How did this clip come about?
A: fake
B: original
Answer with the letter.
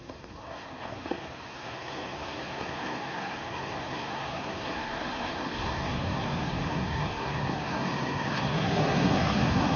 A